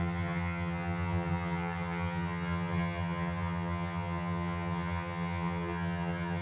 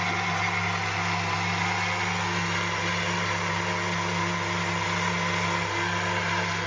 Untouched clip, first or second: second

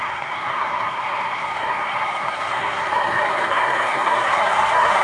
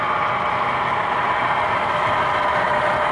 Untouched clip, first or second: second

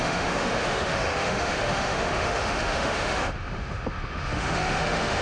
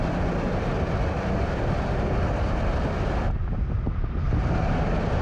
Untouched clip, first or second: second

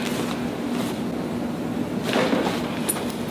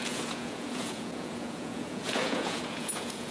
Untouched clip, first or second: first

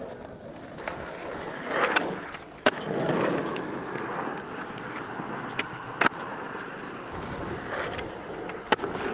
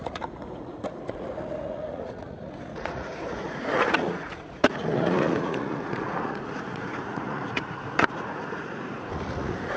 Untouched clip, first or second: first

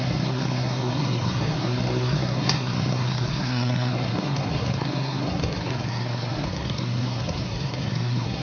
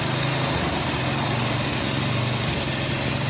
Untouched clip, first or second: second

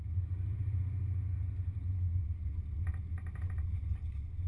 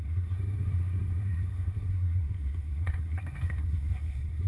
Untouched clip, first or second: first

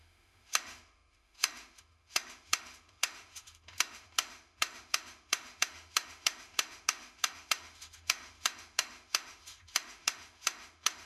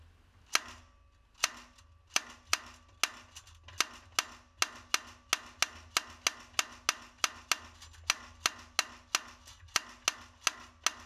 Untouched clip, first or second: second